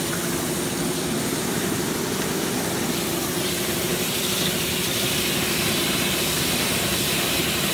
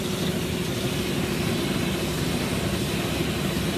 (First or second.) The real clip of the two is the second